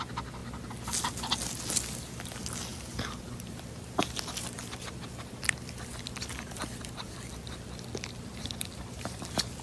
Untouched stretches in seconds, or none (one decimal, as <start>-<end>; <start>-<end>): 0.0-2.7; 7.3-8.3; 9.2-9.6